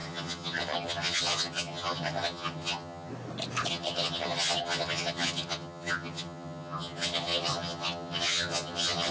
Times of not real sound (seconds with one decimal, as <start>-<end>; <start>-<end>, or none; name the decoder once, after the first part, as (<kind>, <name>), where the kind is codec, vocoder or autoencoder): 0.0-3.1 (vocoder, HiFi-GAN); 3.7-9.1